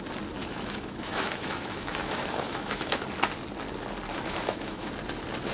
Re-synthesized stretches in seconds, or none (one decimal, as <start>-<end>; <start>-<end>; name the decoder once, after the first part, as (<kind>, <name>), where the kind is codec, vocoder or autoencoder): 0.4-3.0 (autoencoder, DAC-VAE); 4.1-4.9